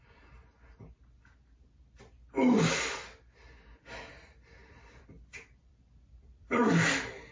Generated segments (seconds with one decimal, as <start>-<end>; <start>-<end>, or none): 0.0-0.4; 4.7-7.3